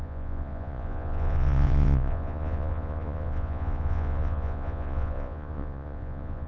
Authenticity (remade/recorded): remade